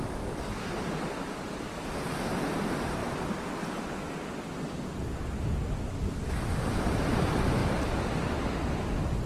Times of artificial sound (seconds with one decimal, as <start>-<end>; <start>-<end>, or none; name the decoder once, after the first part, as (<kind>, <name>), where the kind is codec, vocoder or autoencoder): none